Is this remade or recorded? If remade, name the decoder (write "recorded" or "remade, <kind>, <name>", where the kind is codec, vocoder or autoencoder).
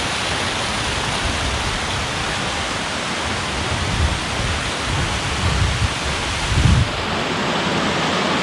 recorded